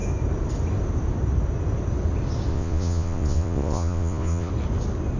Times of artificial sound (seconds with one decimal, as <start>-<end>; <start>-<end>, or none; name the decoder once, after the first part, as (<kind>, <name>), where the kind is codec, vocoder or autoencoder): 2.5-4.5 (vocoder, Vocos)